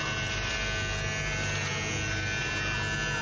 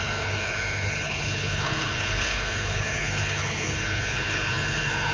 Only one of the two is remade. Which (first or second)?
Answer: second